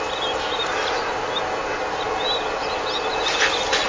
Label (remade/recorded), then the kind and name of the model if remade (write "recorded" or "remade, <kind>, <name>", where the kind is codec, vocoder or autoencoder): recorded